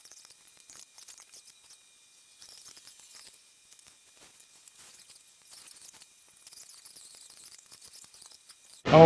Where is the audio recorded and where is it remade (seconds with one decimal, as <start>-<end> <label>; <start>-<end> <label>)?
0.0-9.1 remade